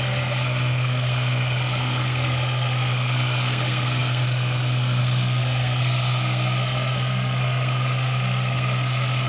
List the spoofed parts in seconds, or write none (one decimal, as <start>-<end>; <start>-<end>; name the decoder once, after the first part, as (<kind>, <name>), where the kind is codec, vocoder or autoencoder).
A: 0.0-9.3 (codec, SNAC)